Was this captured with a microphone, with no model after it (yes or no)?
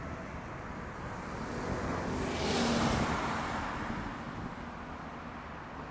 yes